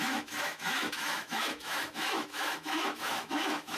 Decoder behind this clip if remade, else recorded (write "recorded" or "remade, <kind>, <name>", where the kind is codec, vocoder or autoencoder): remade, autoencoder, DAC-VAE